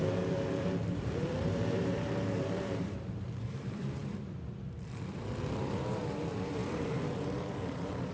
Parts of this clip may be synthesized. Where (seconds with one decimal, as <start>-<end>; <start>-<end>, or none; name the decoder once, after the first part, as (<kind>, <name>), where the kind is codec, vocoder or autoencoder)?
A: 0.0-8.1 (vocoder, BigVGAN v2)